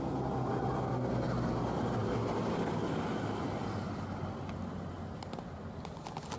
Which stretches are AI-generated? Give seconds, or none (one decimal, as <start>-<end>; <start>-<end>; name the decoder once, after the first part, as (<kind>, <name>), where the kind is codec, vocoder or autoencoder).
2.0-2.9 (vocoder, BigVGAN v2)